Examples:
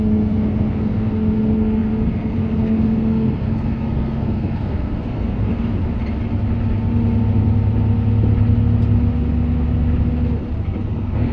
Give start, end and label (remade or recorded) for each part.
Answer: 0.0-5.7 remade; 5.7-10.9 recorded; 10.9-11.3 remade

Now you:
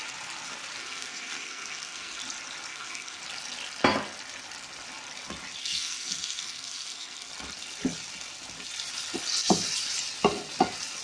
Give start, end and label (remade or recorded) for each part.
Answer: 0.0-0.8 recorded; 0.8-2.2 remade; 2.2-2.7 recorded; 2.7-3.2 remade; 3.2-5.6 recorded; 5.6-7.3 remade; 7.3-11.0 recorded

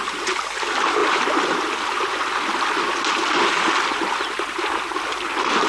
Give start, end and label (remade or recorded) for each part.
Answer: 0.0-5.7 recorded

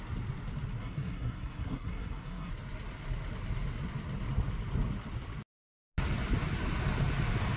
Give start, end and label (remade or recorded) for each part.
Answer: 0.0-0.8 recorded; 0.8-2.5 remade; 2.5-7.6 recorded

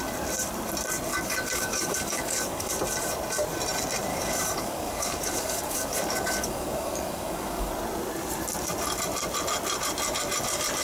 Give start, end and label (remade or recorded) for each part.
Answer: 0.0-1.1 recorded; 1.1-2.7 remade; 2.7-4.1 recorded; 4.1-7.7 remade; 7.7-10.8 recorded

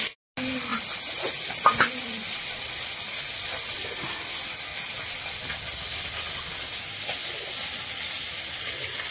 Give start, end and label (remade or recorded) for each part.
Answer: 0.0-9.1 recorded

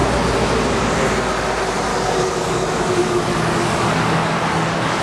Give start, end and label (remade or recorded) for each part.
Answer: 0.0-1.9 recorded; 1.9-5.0 remade

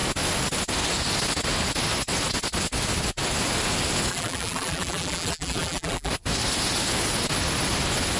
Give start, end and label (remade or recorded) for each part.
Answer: 0.0-4.1 recorded; 4.1-6.1 remade; 6.1-8.2 recorded